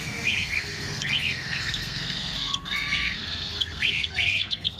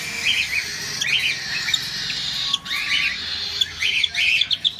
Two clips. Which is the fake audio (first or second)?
first